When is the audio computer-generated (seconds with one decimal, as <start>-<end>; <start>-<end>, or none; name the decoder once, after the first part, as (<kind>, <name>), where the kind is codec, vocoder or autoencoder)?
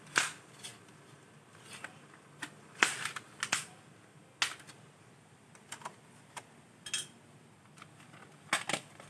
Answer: none